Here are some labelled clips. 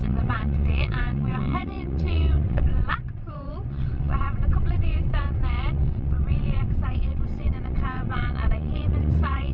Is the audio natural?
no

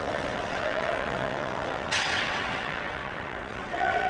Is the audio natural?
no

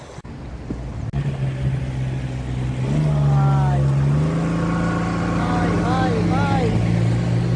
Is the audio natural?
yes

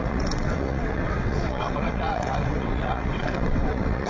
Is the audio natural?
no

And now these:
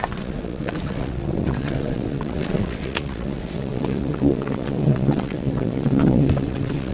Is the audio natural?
no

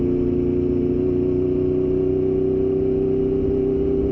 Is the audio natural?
yes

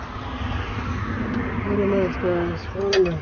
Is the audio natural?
yes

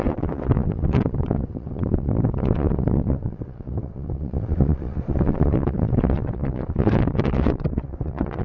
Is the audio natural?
no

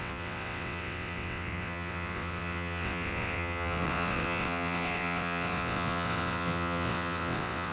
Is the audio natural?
no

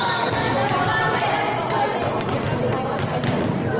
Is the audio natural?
yes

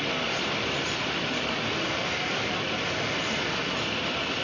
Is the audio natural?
yes